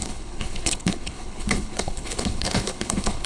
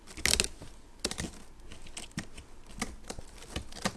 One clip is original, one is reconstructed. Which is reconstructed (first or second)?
first